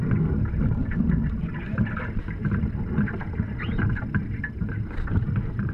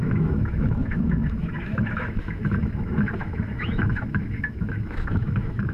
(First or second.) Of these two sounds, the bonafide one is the first